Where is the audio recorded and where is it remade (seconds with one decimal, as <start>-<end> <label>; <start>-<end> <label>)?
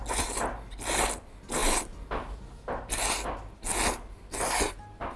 0.0-5.2 recorded